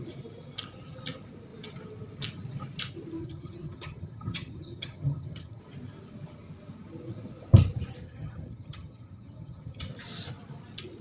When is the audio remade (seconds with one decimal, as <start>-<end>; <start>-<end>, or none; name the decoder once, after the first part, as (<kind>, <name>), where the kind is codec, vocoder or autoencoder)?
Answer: 3.2-5.6 (vocoder, HiFi-GAN); 8.0-9.9